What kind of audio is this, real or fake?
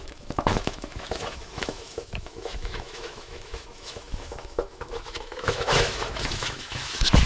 fake